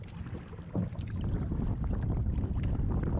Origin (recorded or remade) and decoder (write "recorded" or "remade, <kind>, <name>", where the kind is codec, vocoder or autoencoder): recorded